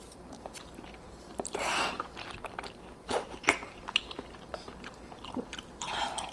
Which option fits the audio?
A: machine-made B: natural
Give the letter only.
A